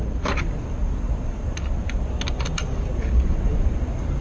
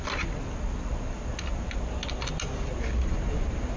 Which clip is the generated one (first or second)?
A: first